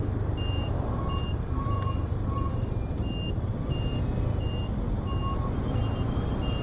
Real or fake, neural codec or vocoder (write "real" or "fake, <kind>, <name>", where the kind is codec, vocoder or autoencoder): real